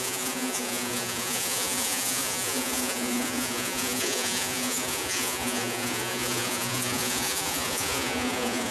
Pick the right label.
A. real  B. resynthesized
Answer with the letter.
B